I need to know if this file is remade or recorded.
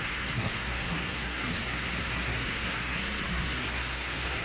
remade